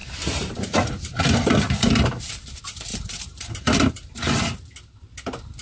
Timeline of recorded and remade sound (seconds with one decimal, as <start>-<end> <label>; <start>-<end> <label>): 0.0-2.4 remade; 2.4-2.9 recorded; 2.9-4.4 remade; 4.4-5.6 recorded